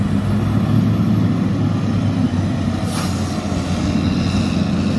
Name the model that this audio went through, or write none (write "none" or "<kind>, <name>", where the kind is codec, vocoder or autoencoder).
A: none